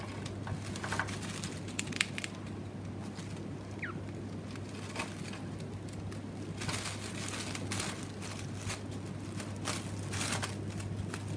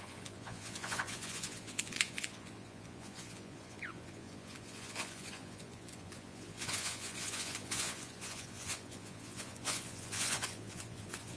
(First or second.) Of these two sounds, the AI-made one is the second